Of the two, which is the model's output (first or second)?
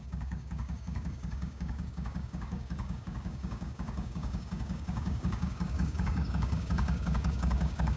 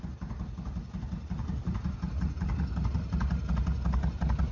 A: first